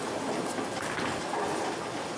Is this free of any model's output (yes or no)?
yes